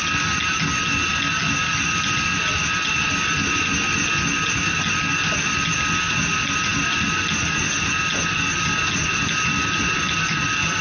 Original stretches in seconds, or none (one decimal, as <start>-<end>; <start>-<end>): 0.0-10.8